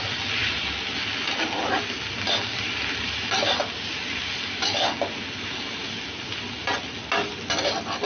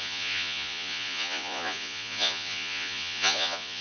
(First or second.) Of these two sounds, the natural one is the first